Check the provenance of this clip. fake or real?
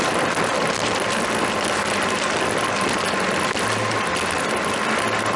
real